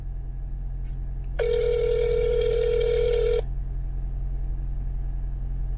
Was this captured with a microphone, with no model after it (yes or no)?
yes